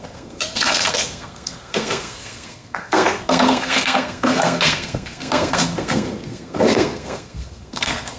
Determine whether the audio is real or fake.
fake